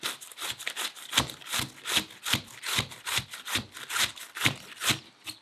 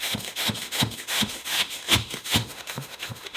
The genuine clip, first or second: first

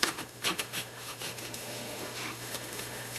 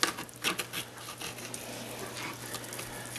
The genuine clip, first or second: second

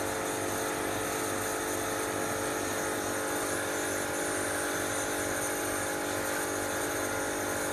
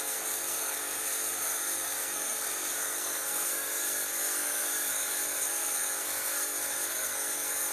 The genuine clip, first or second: first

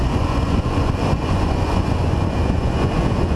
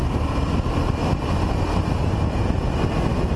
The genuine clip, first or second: second